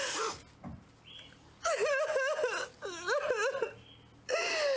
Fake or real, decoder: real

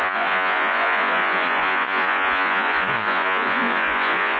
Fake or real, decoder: fake, vocoder, Vocos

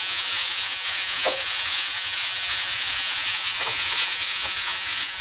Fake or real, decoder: fake, vocoder, Vocos